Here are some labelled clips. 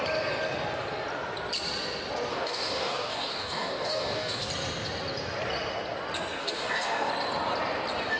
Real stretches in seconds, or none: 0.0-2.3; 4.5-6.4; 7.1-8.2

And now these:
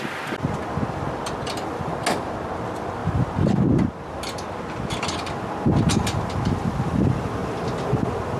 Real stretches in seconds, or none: 0.0-8.4

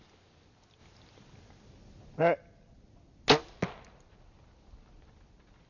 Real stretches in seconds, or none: 0.0-5.7

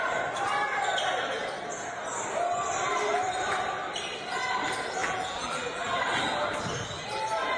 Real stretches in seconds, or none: 0.0-5.0; 6.0-7.6

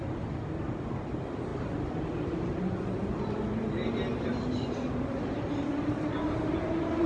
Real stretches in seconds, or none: 0.0-7.1

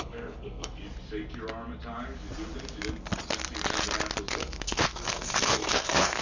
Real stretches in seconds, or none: 0.8-4.3